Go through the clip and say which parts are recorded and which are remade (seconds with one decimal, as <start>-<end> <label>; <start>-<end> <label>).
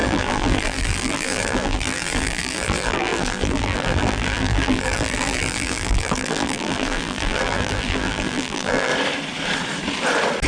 0.0-8.9 remade; 8.9-10.5 recorded